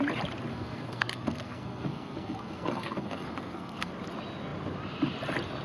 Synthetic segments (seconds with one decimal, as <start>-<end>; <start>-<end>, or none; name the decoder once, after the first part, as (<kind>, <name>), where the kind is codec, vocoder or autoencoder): 0.5-3.9 (codec, SNAC)